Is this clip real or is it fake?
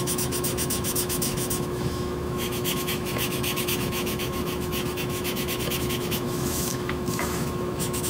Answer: fake